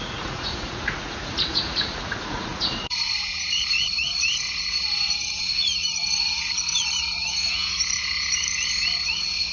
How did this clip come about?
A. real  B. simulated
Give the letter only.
B